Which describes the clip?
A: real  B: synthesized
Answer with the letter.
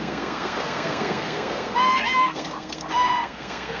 B